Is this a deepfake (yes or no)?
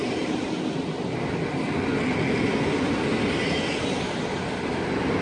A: no